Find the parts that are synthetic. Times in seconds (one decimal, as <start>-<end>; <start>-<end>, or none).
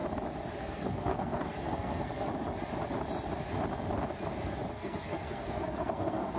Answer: 0.6-2.3; 4.7-6.4